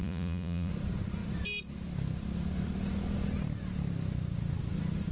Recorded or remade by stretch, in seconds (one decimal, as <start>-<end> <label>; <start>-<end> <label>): 0.0-0.7 remade; 0.7-5.1 recorded